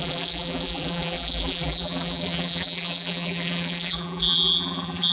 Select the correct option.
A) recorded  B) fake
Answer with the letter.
B